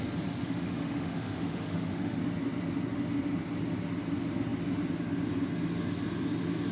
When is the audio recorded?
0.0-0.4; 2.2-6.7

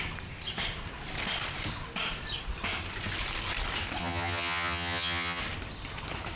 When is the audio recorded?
0.0-4.0; 5.4-6.4

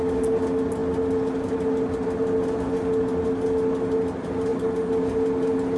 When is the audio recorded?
0.0-5.8

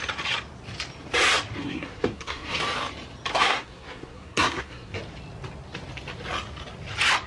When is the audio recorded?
0.0-1.6; 2.6-3.3; 5.0-7.3

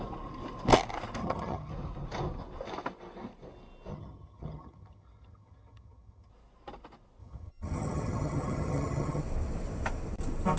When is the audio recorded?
0.0-1.2; 1.7-3.9; 6.3-7.2; 9.2-10.6

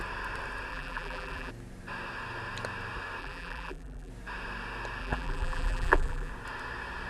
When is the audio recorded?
0.0-0.7; 1.5-3.2; 4.1-5.0; 6.3-7.1

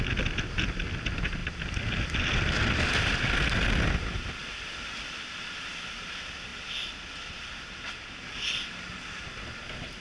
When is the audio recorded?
0.0-10.0

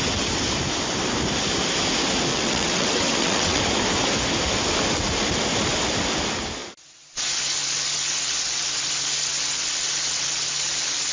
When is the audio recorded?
0.0-2.3; 3.6-11.1